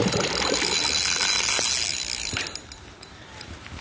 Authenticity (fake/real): real